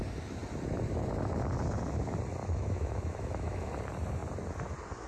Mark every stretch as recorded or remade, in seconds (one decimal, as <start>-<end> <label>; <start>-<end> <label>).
0.0-2.4 recorded; 2.4-3.7 remade; 3.7-5.1 recorded